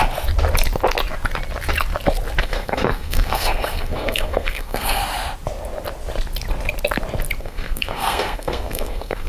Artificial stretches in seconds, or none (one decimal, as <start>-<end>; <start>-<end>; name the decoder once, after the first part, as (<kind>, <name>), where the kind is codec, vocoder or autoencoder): 2.4-5.0 (codec, SNAC); 7.4-9.3

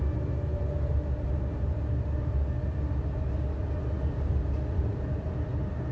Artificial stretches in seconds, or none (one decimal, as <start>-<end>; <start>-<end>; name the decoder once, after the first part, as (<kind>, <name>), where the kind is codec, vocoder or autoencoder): none